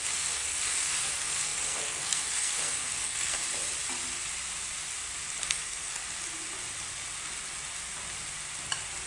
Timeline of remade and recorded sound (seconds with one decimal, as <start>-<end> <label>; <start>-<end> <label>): 0.0-3.4 remade; 3.4-5.4 recorded; 5.4-6.0 remade; 6.0-9.1 recorded